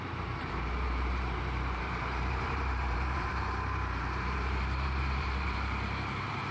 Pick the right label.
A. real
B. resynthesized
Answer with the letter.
B